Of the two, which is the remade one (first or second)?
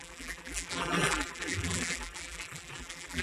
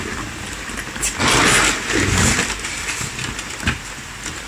first